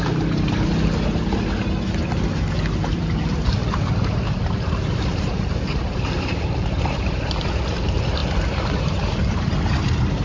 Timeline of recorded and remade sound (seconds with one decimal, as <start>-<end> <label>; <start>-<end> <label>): 0.0-0.7 remade; 0.7-2.9 recorded; 2.9-3.6 remade; 3.6-4.2 recorded; 4.2-10.2 remade